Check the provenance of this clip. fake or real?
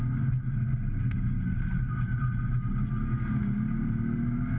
real